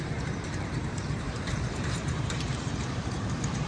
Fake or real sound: fake